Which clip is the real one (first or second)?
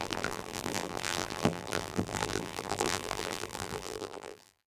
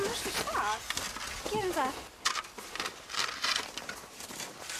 second